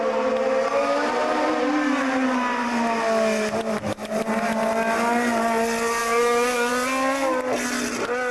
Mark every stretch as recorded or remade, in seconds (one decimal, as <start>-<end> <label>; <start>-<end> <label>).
0.0-6.0 recorded; 6.0-6.7 remade; 6.7-8.3 recorded